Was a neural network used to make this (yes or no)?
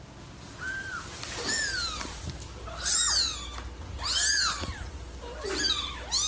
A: no